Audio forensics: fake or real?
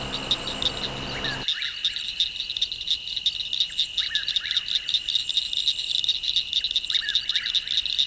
real